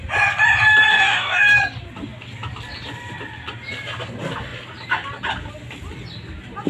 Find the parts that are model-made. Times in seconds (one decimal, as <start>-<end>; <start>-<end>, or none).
0.9-1.6